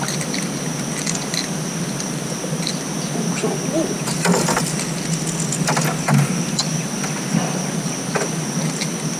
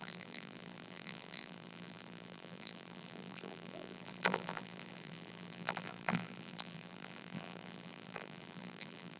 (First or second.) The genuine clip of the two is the first